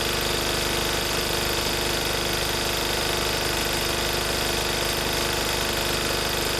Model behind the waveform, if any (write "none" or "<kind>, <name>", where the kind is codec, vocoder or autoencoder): none